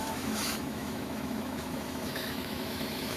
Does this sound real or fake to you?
fake